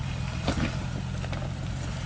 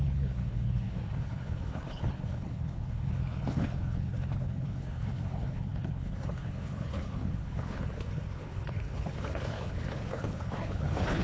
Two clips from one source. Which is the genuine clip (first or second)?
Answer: first